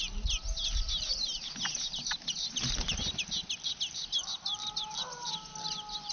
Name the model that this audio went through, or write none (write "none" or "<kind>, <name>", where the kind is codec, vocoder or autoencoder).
none